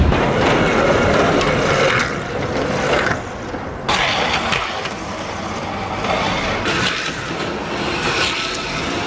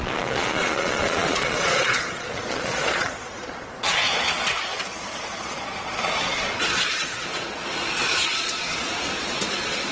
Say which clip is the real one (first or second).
first